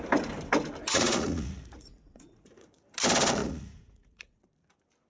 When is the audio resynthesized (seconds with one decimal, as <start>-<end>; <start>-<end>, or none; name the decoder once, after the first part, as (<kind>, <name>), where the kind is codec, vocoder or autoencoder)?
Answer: 0.9-2.8 (vocoder, Vocos); 3.4-4.4